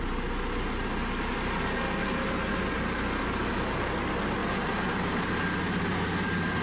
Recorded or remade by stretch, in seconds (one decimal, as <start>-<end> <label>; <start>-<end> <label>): 0.0-6.6 recorded